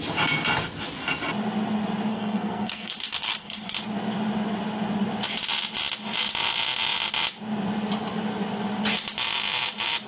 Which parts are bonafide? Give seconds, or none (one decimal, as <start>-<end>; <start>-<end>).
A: 0.0-2.1; 3.7-10.1